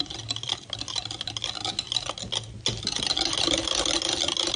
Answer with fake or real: real